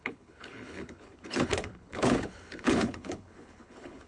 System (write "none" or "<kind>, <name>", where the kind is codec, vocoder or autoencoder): codec, HILCodec